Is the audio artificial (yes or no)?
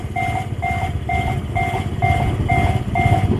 no